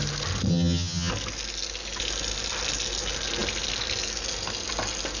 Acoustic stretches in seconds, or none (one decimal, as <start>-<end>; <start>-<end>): 0.0-0.5; 1.1-5.2